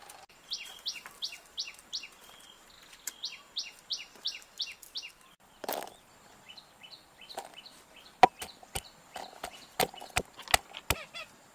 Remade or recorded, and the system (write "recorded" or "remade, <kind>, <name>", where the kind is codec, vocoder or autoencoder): recorded